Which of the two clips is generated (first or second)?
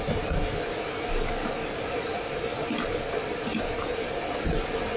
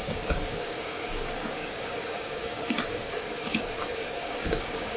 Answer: second